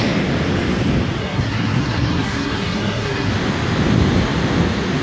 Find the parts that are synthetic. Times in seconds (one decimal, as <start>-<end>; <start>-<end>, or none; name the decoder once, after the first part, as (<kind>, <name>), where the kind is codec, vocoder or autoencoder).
1.2-3.3 (codec, SNAC)